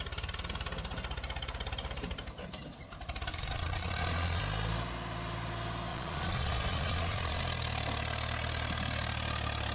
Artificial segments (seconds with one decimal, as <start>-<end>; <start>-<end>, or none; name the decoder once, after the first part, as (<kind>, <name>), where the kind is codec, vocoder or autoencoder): 3.3-4.4 (vocoder, Vocos); 5.9-7.4

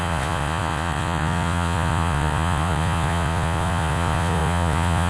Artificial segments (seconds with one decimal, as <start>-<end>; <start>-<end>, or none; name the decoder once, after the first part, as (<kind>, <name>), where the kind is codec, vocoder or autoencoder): 0.0-5.1 (vocoder, Vocos)

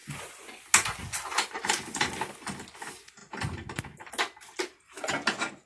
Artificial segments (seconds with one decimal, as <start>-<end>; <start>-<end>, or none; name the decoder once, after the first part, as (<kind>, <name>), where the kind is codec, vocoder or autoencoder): 0.0-0.6 (vocoder, Vocos); 1.1-1.7

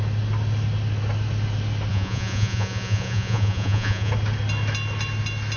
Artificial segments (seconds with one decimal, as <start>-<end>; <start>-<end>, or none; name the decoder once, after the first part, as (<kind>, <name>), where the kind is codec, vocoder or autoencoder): 1.9-4.1 (vocoder, Vocos)

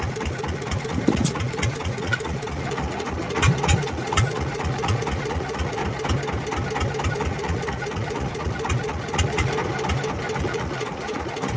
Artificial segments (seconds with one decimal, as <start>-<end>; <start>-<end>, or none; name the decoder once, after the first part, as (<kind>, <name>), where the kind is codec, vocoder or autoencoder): 0.0-5.8 (vocoder, Vocos); 7.1-9.6; 10.4-11.6

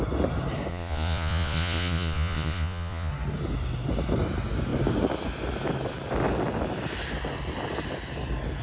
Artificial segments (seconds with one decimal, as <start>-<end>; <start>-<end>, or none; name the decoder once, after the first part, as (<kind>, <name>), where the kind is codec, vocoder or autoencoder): 0.7-3.1 (vocoder, Vocos)

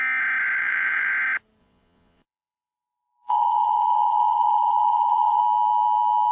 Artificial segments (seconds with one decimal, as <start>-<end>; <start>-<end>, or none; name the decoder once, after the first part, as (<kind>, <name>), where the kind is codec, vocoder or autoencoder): 0.6-1.1 (vocoder, Vocos); 1.6-5.4